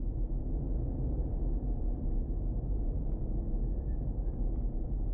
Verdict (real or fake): fake